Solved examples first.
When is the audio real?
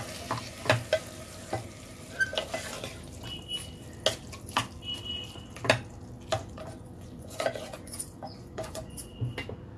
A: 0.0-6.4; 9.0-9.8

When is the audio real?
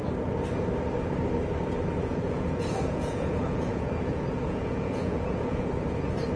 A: 0.0-2.0; 5.7-6.4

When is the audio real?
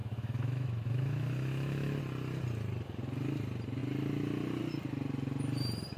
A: 2.0-6.0